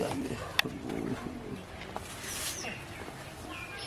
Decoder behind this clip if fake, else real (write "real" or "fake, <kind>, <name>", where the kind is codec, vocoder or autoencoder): real